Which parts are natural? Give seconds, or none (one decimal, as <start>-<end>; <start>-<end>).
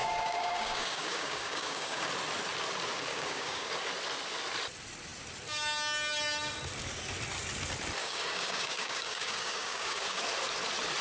2.1-3.1; 3.7-8.0; 10.2-11.0